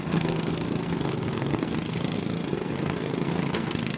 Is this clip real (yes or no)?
no